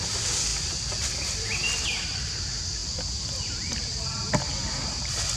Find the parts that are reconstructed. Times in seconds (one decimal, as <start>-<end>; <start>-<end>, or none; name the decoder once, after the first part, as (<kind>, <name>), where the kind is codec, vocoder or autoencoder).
0.5-2.4 (vocoder, BigVGAN v2); 2.8-4.3